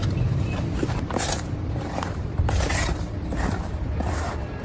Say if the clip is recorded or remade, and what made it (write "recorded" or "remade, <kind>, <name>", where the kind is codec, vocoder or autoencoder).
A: remade, vocoder, BigVGAN v2